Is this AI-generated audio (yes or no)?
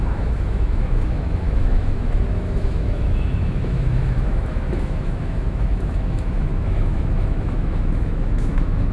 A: yes